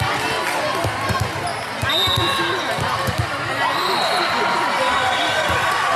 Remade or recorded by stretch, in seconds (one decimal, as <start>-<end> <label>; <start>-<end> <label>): 0.0-6.0 recorded